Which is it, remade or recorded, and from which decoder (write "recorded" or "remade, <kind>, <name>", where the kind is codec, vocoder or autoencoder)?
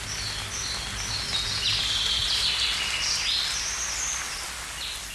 recorded